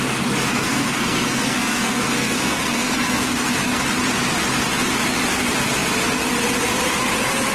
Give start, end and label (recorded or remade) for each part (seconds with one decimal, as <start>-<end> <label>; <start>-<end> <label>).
0.0-0.5 recorded; 0.5-3.8 remade; 3.8-7.5 recorded